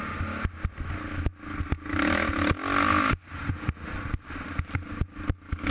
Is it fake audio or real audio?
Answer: real